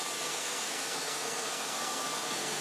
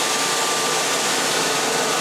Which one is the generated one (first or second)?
first